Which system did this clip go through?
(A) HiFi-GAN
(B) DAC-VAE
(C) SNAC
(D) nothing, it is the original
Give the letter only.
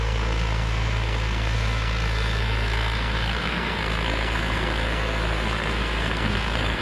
C